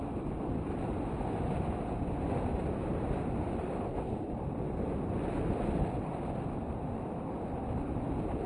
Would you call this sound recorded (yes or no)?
no